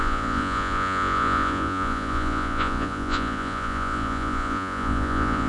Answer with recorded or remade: remade